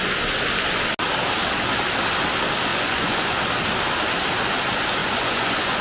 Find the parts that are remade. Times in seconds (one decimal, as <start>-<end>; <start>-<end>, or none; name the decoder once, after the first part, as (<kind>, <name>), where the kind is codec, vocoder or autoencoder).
2.7-3.4 (vocoder, Vocos); 5.0-5.8